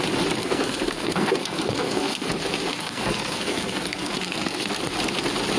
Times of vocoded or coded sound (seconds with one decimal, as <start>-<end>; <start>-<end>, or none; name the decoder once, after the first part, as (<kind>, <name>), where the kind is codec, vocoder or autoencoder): 0.4-2.3 (codec, SNAC); 2.7-4.7